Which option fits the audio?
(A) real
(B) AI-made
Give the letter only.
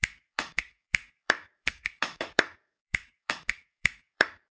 B